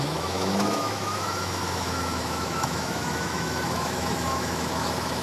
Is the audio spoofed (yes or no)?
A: yes